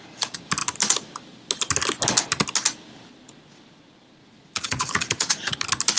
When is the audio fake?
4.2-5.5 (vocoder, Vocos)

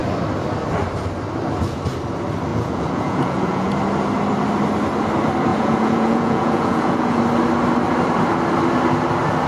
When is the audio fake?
2.5-3.7 (vocoder, Vocos); 5.5-7.2